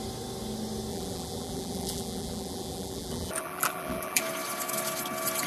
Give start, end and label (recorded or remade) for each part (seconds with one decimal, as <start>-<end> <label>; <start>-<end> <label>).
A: 0.0-0.9 recorded; 0.9-4.2 remade; 4.2-5.5 recorded